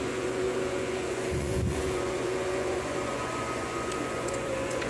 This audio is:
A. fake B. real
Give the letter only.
A